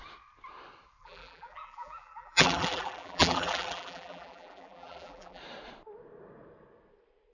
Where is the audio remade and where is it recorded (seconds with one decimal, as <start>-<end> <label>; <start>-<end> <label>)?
0.0-1.0 recorded; 1.0-5.4 remade; 5.4-7.3 recorded